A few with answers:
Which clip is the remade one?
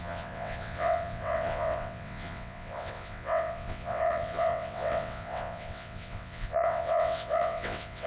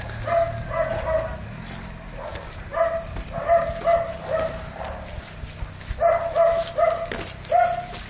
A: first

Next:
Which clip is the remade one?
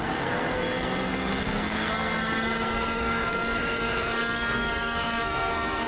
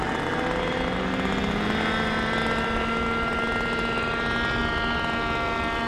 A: first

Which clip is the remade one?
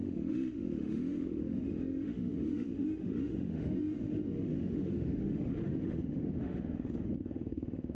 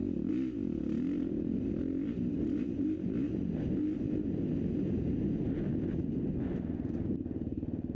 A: first